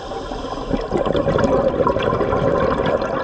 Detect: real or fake real